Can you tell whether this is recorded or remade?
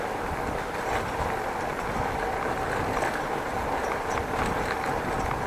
recorded